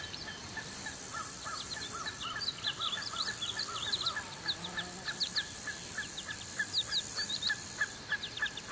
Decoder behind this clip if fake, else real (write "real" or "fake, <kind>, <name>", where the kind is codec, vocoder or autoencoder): real